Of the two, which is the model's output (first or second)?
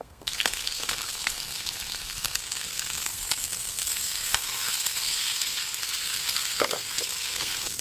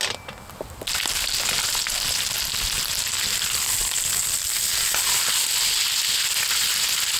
first